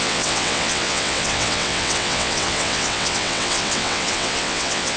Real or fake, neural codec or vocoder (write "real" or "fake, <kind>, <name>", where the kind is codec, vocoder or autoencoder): fake, vocoder, WaveNeXt